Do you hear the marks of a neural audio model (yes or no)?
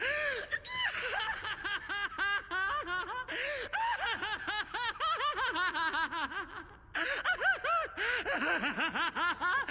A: no